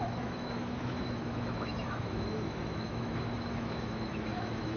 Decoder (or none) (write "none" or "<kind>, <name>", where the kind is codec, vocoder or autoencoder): autoencoder, DAC-VAE